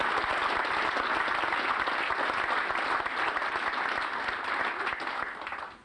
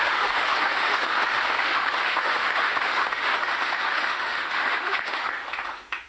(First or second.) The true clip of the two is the first